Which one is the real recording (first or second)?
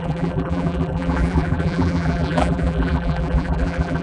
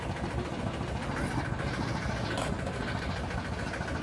second